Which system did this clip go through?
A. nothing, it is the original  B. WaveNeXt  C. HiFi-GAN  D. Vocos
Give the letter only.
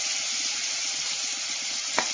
A